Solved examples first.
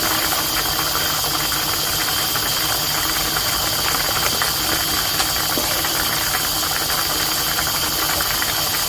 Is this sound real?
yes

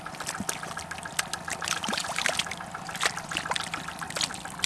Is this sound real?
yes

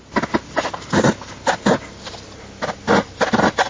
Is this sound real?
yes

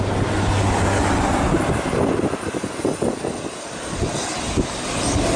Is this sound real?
yes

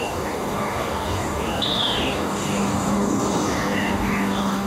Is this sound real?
no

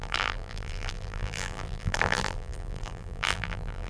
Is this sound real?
no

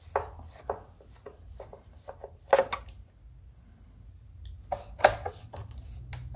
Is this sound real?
yes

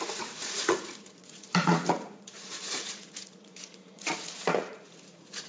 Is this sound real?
no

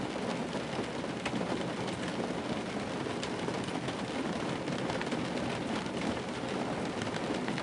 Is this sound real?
yes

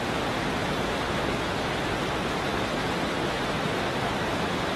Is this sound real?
no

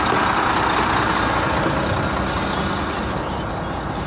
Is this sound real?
yes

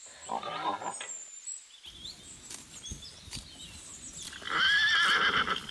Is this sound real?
yes